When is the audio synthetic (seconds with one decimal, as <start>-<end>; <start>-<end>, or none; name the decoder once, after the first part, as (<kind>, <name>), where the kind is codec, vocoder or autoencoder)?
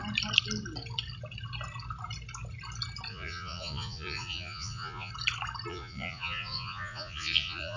3.1-5.1 (vocoder, Vocos); 5.7-7.8